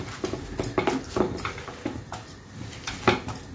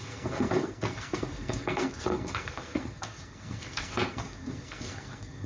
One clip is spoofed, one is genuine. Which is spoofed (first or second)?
second